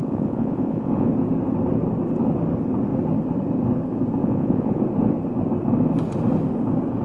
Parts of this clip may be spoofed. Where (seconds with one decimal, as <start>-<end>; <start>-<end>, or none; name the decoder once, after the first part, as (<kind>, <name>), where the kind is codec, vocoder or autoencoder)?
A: 0.0-1.1 (vocoder, Vocos); 4.2-4.8